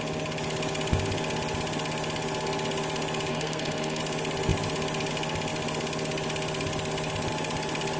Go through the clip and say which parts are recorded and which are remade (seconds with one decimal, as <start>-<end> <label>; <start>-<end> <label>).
0.0-3.3 recorded; 3.3-4.0 remade; 4.0-8.0 recorded